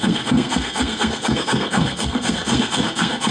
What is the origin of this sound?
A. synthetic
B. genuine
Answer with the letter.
A